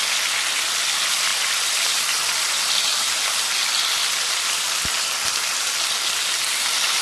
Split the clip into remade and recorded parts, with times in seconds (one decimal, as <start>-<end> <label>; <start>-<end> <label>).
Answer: 0.0-7.0 recorded